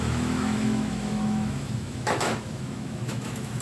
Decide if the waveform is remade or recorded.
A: remade